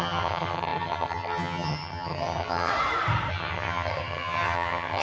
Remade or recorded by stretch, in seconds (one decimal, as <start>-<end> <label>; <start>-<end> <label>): 0.0-2.7 remade; 2.7-3.3 recorded; 3.3-5.0 remade